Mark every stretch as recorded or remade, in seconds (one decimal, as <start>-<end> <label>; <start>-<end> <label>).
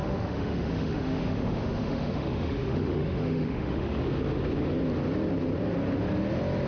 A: 0.0-4.0 remade; 4.0-6.7 recorded